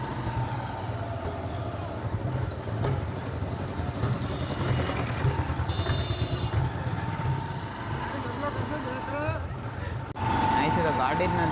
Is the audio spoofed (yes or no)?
no